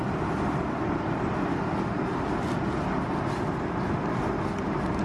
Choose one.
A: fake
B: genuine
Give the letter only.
B